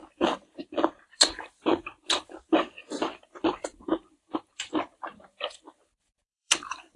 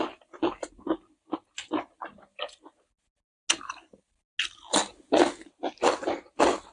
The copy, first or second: first